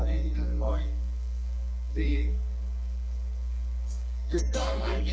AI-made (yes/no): yes